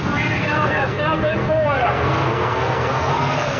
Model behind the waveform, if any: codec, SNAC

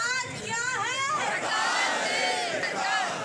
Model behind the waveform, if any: none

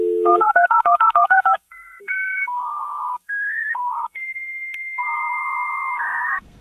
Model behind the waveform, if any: codec, SNAC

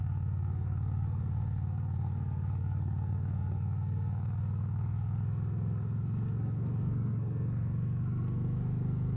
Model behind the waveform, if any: codec, SNAC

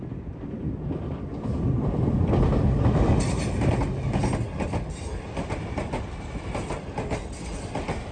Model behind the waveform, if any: none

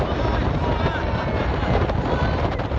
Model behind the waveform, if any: none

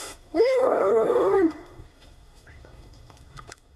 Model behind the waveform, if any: codec, SNAC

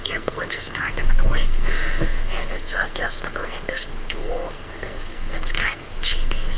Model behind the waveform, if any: codec, SNAC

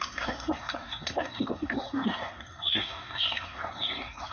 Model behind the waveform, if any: codec, SNAC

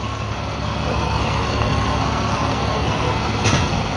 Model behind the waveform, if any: codec, SNAC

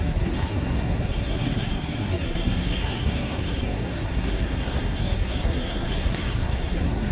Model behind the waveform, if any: codec, SNAC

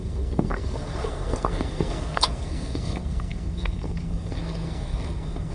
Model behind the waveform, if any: codec, SNAC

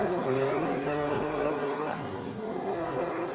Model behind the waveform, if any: codec, SNAC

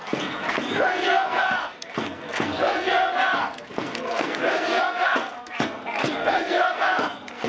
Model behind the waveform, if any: codec, SNAC